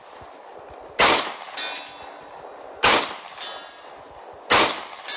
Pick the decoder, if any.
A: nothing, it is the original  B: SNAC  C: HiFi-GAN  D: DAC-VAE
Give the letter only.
A